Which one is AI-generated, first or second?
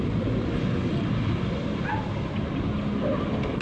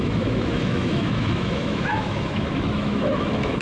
second